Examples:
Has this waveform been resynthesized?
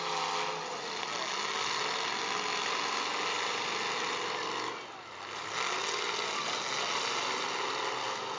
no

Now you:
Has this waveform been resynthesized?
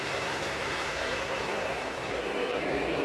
yes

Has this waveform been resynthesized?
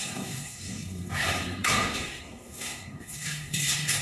yes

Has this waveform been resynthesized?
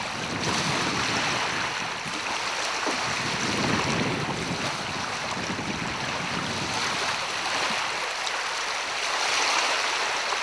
no